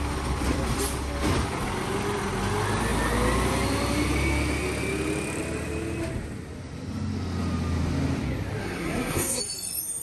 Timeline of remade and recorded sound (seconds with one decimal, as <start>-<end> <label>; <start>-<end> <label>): 0.0-8.6 recorded; 8.6-9.4 remade; 9.4-10.0 recorded